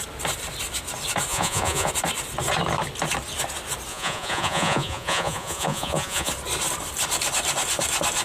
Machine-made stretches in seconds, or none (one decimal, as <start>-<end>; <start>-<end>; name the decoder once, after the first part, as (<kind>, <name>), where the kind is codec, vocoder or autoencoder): 1.3-1.9 (vocoder, Vocos); 3.9-6.3